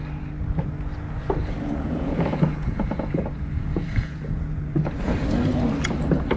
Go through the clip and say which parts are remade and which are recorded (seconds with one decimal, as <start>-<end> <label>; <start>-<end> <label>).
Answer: 0.0-1.4 recorded; 1.4-5.1 remade; 5.1-6.4 recorded